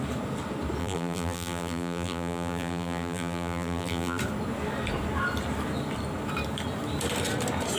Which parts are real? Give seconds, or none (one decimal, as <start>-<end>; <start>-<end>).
0.0-0.8; 4.2-7.8